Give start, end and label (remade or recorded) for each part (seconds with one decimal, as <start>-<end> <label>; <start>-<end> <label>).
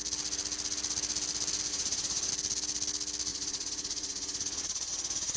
0.0-1.7 recorded; 1.7-2.3 remade; 2.3-3.3 recorded; 3.3-5.4 remade